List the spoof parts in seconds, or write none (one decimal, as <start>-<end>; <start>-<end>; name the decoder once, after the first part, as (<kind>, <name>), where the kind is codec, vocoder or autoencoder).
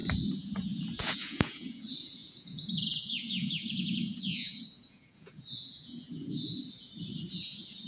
0.0-7.9 (vocoder, Vocos)